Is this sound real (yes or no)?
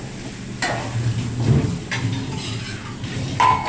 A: yes